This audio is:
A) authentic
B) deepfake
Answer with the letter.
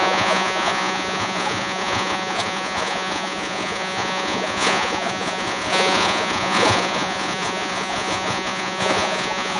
B